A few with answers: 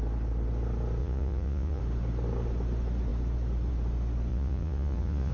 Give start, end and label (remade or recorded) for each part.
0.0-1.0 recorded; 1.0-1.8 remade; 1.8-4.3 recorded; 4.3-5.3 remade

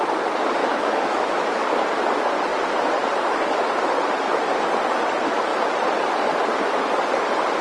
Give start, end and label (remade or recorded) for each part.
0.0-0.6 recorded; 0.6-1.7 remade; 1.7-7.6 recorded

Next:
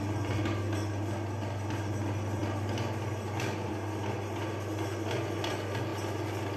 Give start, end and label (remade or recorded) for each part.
0.0-6.6 recorded

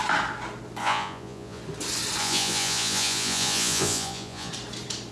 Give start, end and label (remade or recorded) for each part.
0.0-0.8 recorded; 0.8-1.6 remade; 1.6-2.2 recorded; 2.2-4.5 remade; 4.5-5.1 recorded